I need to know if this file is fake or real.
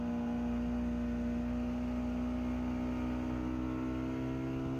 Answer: real